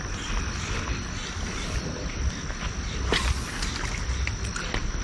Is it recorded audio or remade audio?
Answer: recorded